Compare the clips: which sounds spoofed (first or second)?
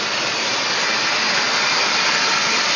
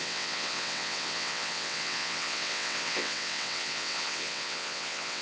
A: second